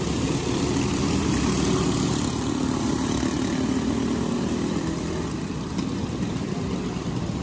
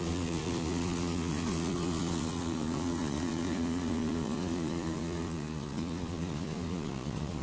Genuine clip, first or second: first